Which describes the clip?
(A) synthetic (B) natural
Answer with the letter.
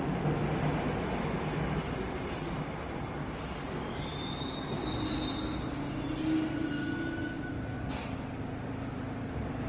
B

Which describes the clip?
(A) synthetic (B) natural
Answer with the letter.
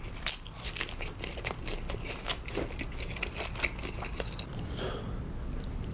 B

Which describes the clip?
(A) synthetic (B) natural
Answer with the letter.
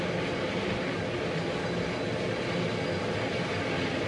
B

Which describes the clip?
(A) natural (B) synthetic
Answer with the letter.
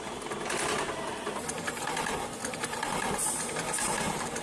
A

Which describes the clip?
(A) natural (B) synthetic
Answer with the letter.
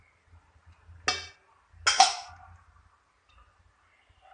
A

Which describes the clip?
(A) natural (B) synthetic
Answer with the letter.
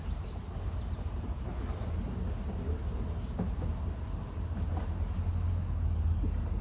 A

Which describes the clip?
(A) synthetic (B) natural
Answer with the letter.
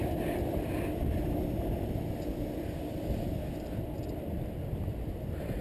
B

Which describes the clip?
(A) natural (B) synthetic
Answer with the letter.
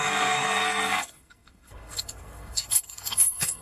B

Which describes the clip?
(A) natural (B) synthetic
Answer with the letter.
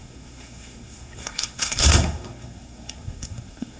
B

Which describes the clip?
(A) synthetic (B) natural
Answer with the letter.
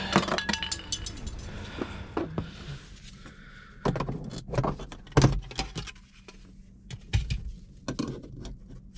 B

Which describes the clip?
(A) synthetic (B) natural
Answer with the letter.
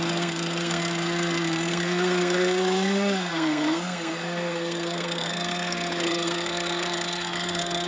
A